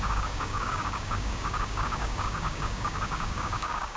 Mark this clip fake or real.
fake